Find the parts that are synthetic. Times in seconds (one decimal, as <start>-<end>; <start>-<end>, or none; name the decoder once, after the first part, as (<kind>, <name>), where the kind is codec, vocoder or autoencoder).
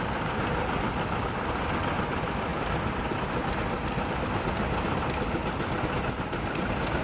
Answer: none